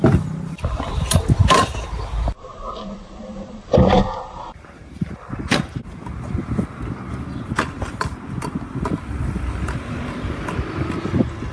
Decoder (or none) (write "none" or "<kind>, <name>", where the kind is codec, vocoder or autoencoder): vocoder, BigVGAN v2